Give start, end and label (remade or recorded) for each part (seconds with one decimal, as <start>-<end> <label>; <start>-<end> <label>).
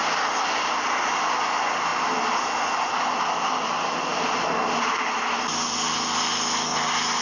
0.0-7.2 recorded